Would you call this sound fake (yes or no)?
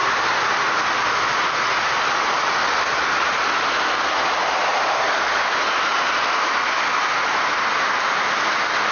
no